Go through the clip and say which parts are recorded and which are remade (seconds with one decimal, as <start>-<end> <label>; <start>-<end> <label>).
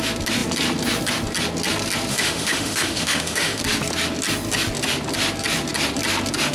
0.0-2.1 recorded; 2.1-3.6 remade; 3.6-6.5 recorded